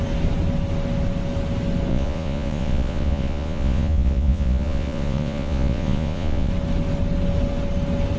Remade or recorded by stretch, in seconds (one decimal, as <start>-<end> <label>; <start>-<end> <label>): 0.0-1.9 recorded; 1.9-6.5 remade; 6.5-8.2 recorded